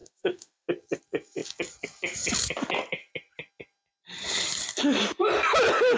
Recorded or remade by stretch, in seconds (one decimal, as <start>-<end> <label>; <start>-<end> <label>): 0.0-0.7 remade; 0.7-6.0 recorded